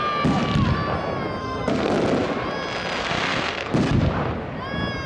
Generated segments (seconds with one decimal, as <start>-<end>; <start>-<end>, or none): 1.4-1.9; 3.0-3.7